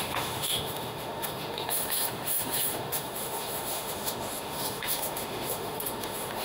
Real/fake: fake